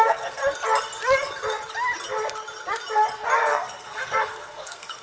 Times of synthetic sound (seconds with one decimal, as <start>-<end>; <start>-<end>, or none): 0.0-0.4; 3.4-5.0